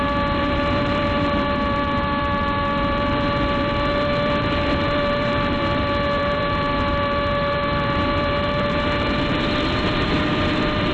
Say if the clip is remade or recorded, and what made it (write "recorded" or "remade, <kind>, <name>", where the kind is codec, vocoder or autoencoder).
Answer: remade, vocoder, BigVGAN v2